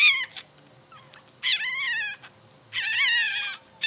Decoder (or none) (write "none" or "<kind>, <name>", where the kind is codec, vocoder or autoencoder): none